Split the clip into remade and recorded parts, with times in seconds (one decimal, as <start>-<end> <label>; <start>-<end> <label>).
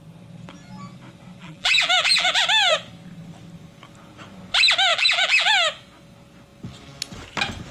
0.0-1.4 recorded; 1.4-2.4 remade; 2.4-4.9 recorded; 4.9-5.5 remade; 5.5-7.7 recorded